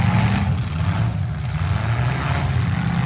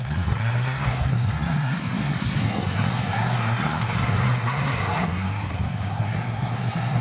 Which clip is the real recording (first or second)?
first